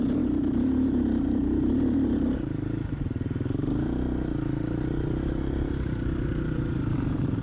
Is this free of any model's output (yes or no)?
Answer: no